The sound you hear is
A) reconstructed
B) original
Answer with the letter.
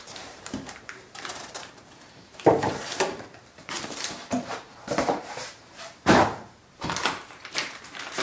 A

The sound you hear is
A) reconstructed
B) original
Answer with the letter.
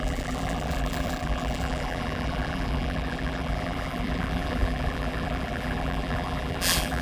A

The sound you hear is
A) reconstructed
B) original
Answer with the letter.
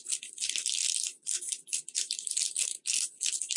B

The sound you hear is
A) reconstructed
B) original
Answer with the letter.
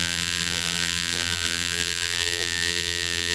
A